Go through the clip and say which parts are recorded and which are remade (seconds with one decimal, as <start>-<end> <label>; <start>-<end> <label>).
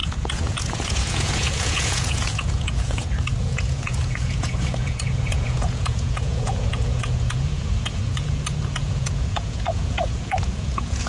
0.0-11.1 remade